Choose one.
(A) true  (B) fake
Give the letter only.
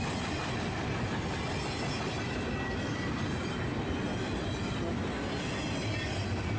A